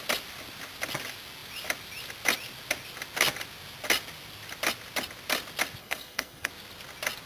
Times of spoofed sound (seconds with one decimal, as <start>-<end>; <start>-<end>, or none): 5.8-6.5